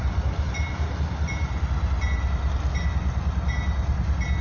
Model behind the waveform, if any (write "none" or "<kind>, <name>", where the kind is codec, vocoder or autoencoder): none